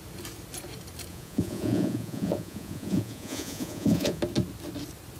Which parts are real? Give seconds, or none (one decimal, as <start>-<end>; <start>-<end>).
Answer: 0.0-1.1; 4.2-5.2